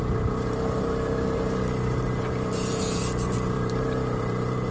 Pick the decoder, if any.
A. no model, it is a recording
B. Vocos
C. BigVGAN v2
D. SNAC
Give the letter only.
C